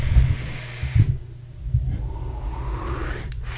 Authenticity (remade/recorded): recorded